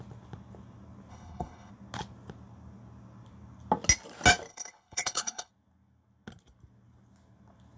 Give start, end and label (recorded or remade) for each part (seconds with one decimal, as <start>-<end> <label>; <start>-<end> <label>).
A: 0.0-1.1 recorded; 1.1-1.7 remade; 1.7-4.5 recorded; 4.5-5.5 remade; 5.5-7.8 recorded